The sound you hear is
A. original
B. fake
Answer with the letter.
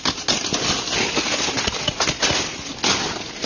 A